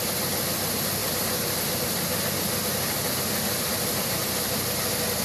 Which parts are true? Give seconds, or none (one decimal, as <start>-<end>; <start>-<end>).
0.0-5.2